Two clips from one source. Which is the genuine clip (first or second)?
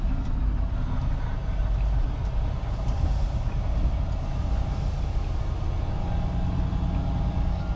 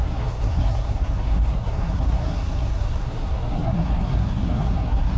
first